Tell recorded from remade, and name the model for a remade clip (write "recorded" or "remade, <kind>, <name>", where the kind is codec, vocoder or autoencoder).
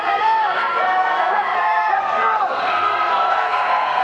remade, codec, SNAC